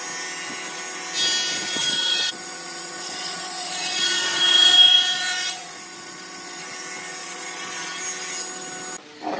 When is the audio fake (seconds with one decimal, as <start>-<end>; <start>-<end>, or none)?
1.8-6.6; 7.2-8.0